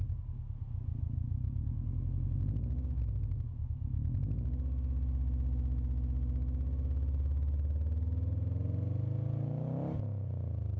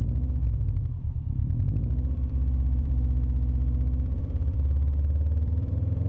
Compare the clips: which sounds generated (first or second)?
second